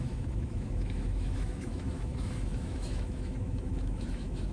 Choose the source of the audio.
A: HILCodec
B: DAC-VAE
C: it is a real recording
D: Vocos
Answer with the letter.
B